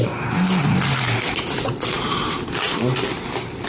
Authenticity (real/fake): real